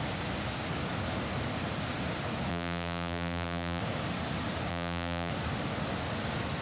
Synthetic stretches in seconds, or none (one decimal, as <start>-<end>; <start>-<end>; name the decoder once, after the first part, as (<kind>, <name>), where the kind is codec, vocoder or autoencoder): 2.5-3.8 (vocoder, BigVGAN v2); 4.7-5.3